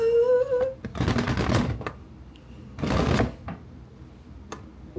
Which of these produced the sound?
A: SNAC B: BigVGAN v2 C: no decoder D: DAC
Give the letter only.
C